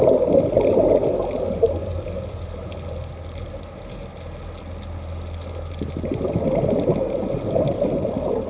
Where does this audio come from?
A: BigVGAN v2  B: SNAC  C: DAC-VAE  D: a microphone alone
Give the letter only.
D